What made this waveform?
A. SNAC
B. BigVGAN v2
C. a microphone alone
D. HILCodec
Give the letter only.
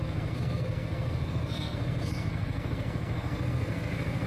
A